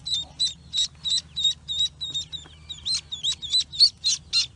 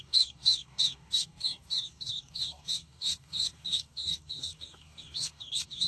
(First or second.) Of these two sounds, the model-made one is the second